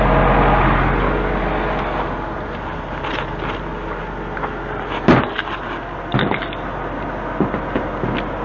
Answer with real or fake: real